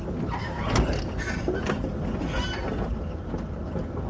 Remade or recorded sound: recorded